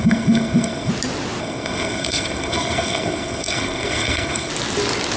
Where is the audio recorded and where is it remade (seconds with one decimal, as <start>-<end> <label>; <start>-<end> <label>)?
0.0-0.9 remade; 0.9-1.4 recorded; 1.4-4.5 remade; 4.5-5.2 recorded

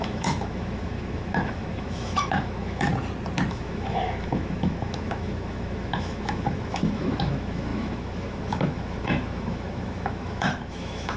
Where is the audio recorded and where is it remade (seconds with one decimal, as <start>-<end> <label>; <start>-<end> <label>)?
0.0-2.9 remade; 2.9-3.5 recorded; 3.5-11.2 remade

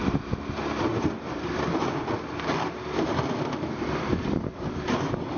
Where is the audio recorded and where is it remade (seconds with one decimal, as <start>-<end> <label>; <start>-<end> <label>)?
0.0-0.9 recorded; 0.9-4.1 remade; 4.1-5.4 recorded

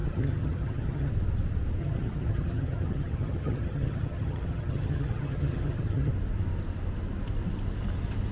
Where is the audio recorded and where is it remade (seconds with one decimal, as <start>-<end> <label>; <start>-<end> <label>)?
0.0-1.1 remade; 1.1-1.8 recorded; 1.8-6.1 remade; 6.1-8.3 recorded

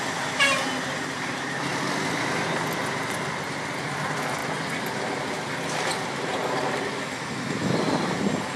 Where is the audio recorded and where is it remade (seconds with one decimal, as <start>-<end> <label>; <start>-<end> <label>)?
0.0-8.6 recorded

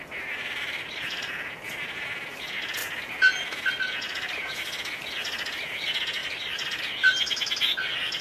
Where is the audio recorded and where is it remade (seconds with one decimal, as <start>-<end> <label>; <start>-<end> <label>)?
0.0-0.4 recorded; 0.4-1.3 remade; 1.3-6.2 recorded; 6.2-6.8 remade; 6.8-8.2 recorded

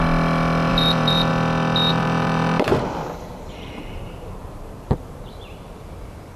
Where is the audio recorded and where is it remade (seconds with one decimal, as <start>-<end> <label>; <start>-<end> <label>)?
0.0-0.7 recorded; 0.7-1.3 remade; 1.3-1.9 recorded; 1.9-5.7 remade; 5.7-6.4 recorded

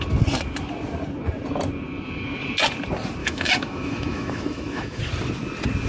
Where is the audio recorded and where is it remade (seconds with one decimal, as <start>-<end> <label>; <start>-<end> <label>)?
0.0-3.2 recorded; 3.2-5.0 remade; 5.0-5.9 recorded